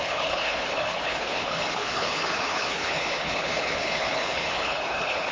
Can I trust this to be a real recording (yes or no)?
no